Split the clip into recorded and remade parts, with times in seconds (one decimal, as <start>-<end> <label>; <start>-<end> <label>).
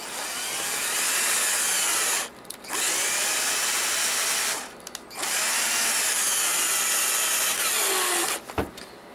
0.0-9.1 recorded